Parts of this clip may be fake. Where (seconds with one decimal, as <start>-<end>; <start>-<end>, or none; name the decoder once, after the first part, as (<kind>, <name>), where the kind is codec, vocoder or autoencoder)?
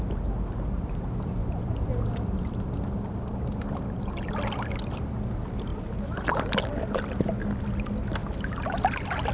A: 1.4-1.9 (vocoder, Vocos)